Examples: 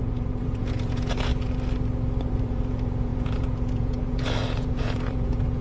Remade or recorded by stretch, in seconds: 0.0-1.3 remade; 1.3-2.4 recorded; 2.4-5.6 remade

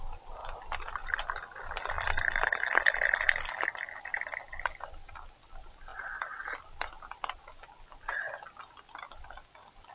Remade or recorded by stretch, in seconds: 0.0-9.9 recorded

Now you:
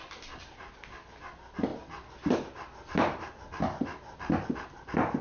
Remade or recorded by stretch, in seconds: 0.0-5.2 recorded

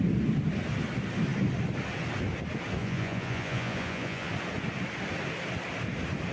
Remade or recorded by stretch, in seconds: 0.0-2.8 recorded; 2.8-4.3 remade; 4.3-6.3 recorded

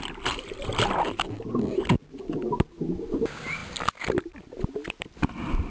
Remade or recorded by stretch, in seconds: 0.0-5.7 recorded

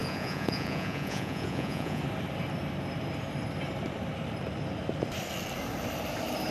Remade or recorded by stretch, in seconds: 0.0-2.0 remade; 2.0-6.5 recorded

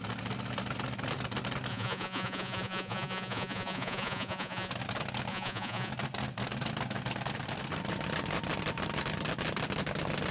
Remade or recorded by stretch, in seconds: 0.0-1.7 recorded; 1.7-4.7 remade; 4.7-5.3 recorded; 5.3-5.9 remade; 5.9-10.3 recorded